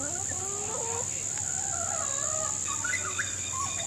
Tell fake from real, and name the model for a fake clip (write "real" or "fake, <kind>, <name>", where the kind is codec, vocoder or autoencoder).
real